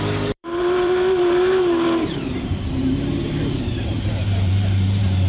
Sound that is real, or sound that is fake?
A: fake